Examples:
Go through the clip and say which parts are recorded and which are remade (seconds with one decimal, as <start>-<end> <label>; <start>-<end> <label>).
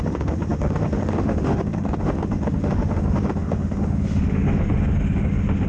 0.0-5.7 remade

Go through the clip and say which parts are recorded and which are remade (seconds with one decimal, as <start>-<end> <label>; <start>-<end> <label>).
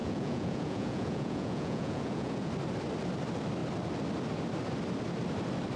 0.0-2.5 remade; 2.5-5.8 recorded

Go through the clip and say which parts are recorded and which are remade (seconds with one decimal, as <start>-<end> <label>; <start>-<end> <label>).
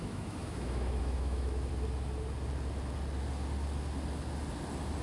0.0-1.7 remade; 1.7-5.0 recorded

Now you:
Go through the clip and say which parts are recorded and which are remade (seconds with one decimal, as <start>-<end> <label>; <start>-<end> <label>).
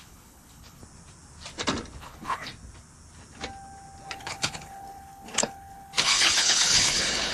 0.0-0.8 remade; 0.8-2.0 recorded; 2.0-2.5 remade; 2.5-4.1 recorded; 4.1-7.3 remade